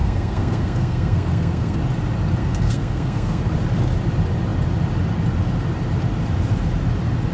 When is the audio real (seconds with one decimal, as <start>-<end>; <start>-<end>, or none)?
1.8-2.4; 3.4-7.3